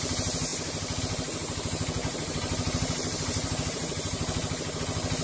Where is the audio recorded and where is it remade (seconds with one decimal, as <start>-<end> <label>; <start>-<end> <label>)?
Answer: 0.0-2.0 recorded; 2.0-4.8 remade; 4.8-5.2 recorded